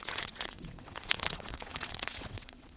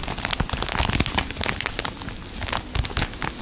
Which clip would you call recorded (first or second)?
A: second